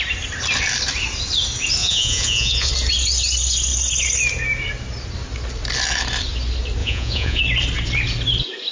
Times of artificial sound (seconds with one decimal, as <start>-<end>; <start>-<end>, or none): 1.8-2.7; 6.8-7.4